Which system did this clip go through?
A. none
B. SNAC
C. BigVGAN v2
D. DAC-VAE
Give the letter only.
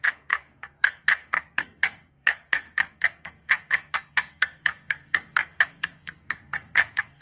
B